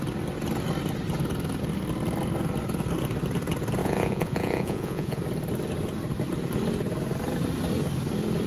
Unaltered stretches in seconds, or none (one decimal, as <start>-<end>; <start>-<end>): 0.0-3.8; 5.2-8.5